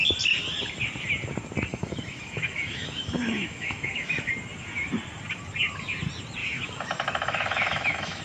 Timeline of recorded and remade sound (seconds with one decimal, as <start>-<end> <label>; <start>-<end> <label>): 0.0-1.7 recorded; 1.7-4.3 remade; 4.3-6.4 recorded; 6.4-8.2 remade